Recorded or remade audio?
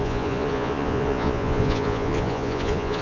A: remade